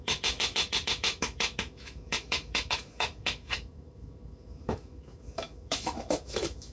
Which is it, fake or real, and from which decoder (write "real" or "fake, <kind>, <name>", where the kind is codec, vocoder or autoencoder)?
fake, autoencoder, DAC-VAE